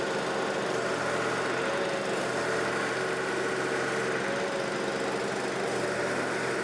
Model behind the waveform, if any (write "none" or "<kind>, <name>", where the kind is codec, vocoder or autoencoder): none